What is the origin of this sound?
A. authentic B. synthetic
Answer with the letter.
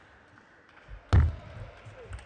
A